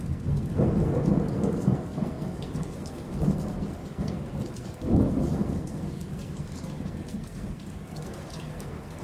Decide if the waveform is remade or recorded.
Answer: remade